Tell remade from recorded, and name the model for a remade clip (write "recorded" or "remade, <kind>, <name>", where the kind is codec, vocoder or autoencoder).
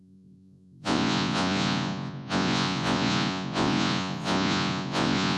remade, vocoder, Vocos